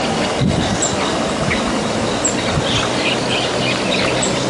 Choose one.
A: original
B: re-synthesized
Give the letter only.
A